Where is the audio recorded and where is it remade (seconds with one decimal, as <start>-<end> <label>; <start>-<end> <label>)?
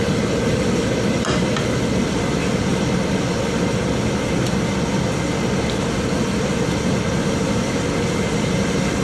0.0-9.0 recorded